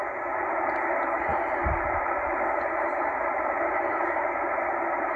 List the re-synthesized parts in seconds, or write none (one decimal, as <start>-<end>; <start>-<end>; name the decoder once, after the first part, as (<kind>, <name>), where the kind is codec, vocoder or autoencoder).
none